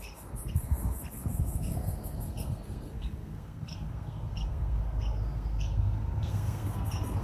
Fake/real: fake